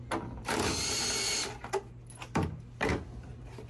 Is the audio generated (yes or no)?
no